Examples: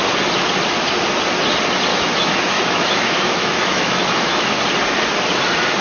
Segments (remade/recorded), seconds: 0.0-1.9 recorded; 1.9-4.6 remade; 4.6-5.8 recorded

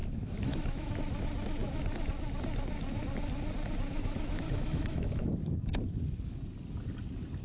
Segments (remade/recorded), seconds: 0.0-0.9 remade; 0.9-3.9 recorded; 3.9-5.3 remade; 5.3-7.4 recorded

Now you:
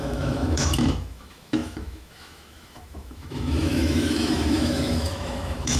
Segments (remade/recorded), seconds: 0.0-5.8 remade

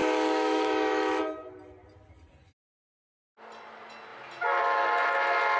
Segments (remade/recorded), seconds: 0.0-1.2 remade; 1.2-5.6 recorded

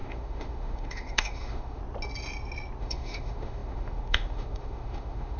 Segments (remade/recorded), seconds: 0.0-1.8 remade; 1.8-2.8 recorded; 2.8-5.4 remade

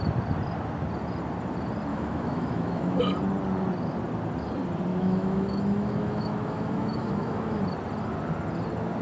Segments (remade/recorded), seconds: 0.0-1.9 recorded; 1.9-3.0 remade; 3.0-4.9 recorded; 4.9-7.6 remade; 7.6-9.0 recorded

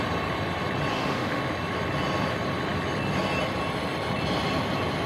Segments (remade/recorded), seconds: 0.0-0.9 recorded; 0.9-1.4 remade; 1.4-5.1 recorded